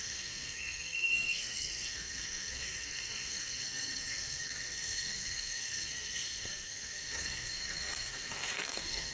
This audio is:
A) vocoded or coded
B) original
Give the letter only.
A